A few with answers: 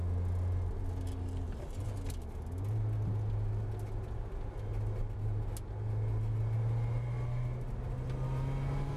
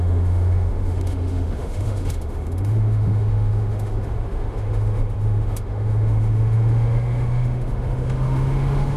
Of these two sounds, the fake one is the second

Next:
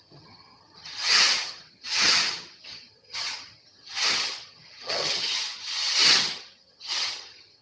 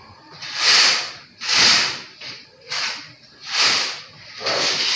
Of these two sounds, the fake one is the first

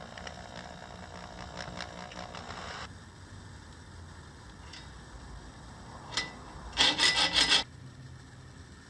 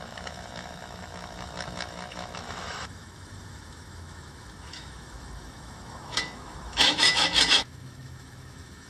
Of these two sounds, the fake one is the second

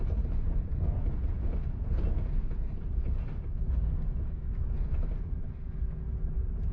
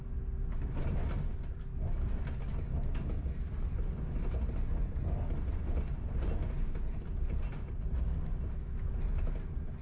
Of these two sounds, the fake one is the first